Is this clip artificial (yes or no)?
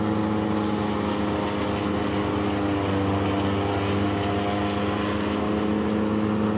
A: no